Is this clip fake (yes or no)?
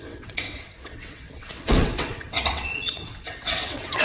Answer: yes